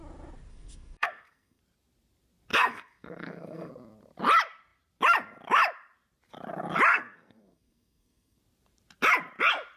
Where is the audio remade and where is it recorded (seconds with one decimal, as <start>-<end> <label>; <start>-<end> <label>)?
0.0-0.5 recorded; 0.5-1.6 remade; 1.6-2.5 recorded; 2.5-3.7 remade; 3.7-6.9 recorded; 6.9-8.4 remade; 8.4-9.8 recorded